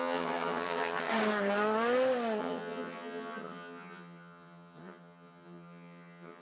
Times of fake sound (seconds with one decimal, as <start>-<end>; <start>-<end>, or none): 0.0-1.1; 2.4-6.4